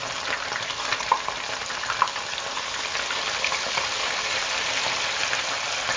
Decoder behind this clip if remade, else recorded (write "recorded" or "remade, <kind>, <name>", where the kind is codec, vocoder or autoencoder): recorded